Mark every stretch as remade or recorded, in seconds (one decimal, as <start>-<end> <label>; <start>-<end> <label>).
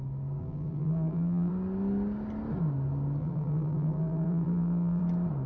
0.0-0.4 recorded; 0.4-1.5 remade; 1.5-3.2 recorded; 3.2-5.0 remade; 5.0-5.5 recorded